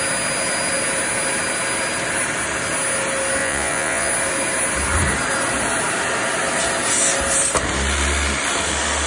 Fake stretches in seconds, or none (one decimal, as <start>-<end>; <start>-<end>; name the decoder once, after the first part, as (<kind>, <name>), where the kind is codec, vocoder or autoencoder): 3.4-4.1 (vocoder, Vocos)